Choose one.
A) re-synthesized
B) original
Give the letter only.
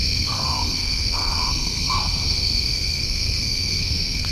A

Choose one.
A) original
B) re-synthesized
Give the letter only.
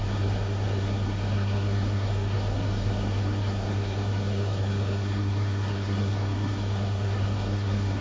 B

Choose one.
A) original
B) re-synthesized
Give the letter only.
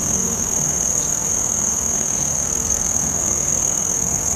B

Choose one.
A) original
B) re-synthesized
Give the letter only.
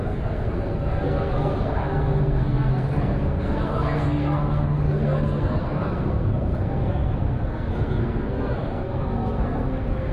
B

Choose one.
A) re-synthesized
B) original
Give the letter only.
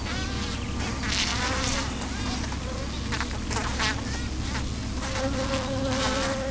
B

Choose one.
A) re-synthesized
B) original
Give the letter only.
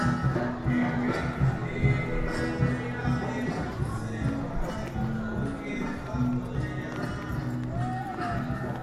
B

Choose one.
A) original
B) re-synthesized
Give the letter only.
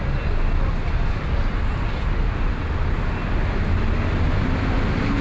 A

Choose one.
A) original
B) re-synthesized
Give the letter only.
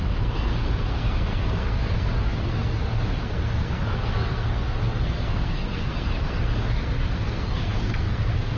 B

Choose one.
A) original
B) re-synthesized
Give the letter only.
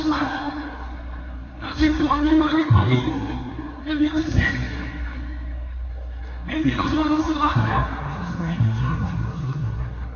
B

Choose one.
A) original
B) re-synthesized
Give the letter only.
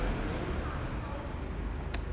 A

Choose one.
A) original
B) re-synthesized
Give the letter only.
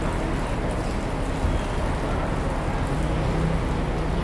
A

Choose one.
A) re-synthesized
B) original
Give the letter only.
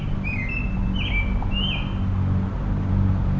B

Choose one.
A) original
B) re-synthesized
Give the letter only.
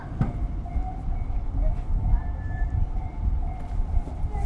A